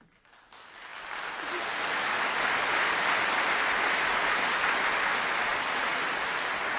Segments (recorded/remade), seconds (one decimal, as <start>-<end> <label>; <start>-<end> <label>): 0.0-6.8 recorded